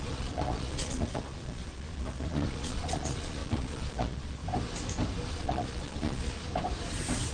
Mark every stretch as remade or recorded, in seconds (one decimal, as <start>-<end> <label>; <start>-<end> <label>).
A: 0.0-4.4 remade; 4.4-5.3 recorded; 5.3-6.4 remade; 6.4-7.3 recorded